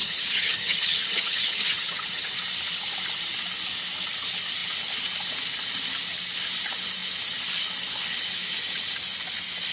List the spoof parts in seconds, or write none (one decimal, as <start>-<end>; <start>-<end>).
0.0-2.3